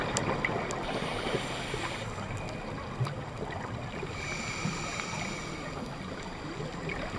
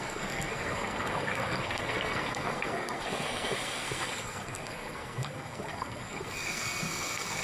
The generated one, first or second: second